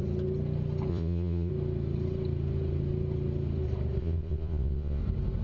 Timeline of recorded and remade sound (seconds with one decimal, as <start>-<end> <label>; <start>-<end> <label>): 0.0-0.9 recorded; 0.9-1.5 remade; 1.5-4.0 recorded; 4.0-5.0 remade; 5.0-5.4 recorded